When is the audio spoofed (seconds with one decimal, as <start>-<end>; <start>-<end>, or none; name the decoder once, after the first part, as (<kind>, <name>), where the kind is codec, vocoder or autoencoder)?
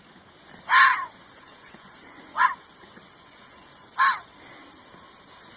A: 0.9-4.0 (vocoder, Vocos)